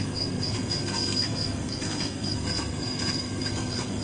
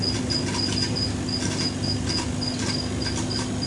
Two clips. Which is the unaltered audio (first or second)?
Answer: second